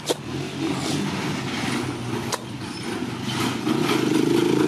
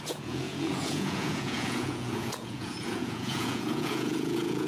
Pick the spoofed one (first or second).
second